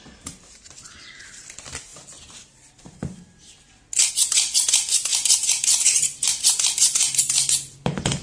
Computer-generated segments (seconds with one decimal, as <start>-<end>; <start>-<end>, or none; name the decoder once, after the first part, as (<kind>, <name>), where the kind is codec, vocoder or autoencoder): none